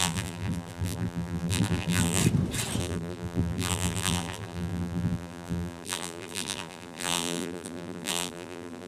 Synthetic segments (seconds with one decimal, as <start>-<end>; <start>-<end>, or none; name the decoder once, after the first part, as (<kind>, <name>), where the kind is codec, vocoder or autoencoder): 0.0-2.2 (vocoder, BigVGAN v2); 2.8-8.9